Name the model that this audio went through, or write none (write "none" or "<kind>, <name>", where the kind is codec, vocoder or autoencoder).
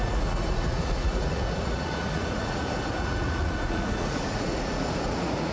vocoder, Vocos